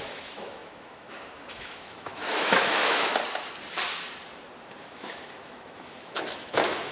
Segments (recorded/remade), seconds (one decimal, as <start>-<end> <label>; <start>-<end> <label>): 0.0-3.1 remade; 3.1-4.8 recorded; 4.8-6.9 remade